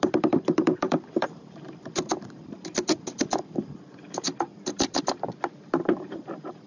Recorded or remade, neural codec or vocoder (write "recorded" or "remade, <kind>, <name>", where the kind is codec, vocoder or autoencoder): remade, vocoder, BigVGAN v2